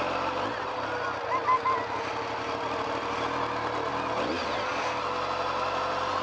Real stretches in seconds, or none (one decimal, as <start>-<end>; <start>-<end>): 0.0-6.2